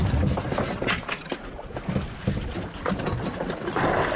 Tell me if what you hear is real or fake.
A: real